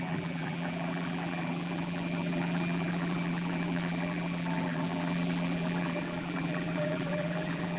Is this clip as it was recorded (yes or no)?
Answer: no